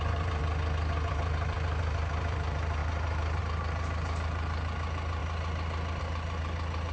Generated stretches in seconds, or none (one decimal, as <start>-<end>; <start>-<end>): 0.0-0.4; 1.1-5.2; 6.0-6.9